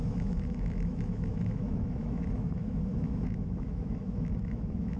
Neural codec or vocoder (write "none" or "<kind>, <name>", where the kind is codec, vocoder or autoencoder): autoencoder, DAC-VAE